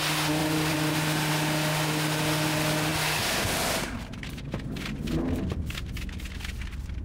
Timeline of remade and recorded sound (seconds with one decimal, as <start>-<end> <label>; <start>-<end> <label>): 0.0-0.4 recorded; 0.4-1.3 remade; 1.3-7.0 recorded